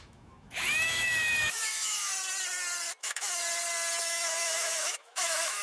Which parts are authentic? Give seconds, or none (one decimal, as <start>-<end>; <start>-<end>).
2.1-3.0; 3.4-4.0